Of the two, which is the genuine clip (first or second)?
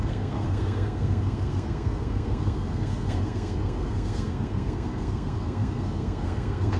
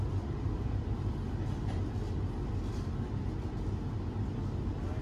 second